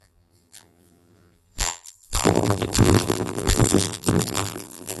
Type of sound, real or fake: fake